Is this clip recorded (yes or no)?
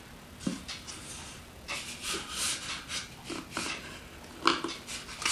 yes